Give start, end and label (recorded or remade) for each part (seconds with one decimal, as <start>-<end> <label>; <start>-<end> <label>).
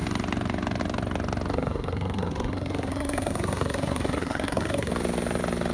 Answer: 0.0-1.5 recorded; 1.5-4.9 remade; 4.9-5.7 recorded